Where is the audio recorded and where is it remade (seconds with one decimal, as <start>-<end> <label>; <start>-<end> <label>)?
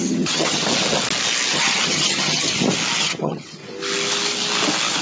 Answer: 0.0-0.6 remade; 0.6-1.5 recorded; 1.5-2.5 remade; 2.5-3.0 recorded; 3.0-3.6 remade; 3.6-5.0 recorded